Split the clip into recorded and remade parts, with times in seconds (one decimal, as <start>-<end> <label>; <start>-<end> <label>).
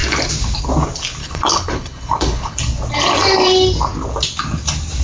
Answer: 0.0-1.2 recorded; 1.2-2.6 remade; 2.6-5.0 recorded